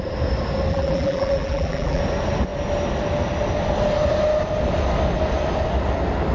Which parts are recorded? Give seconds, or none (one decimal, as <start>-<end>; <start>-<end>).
0.0-0.7; 2.0-6.3